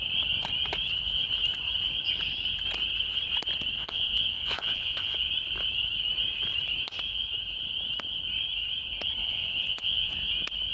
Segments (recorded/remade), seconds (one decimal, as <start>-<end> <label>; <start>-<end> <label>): 0.0-3.8 recorded; 3.8-5.3 remade; 5.3-9.2 recorded; 9.2-10.1 remade; 10.1-10.7 recorded